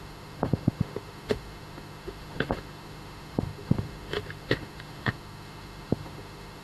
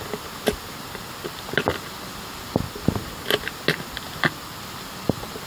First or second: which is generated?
first